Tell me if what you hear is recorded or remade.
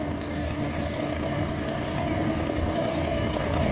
remade